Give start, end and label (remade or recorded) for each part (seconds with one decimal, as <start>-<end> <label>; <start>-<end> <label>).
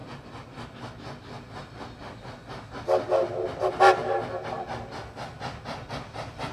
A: 0.0-6.5 recorded